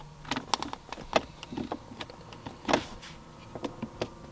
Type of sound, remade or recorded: recorded